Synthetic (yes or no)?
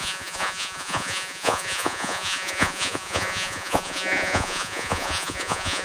yes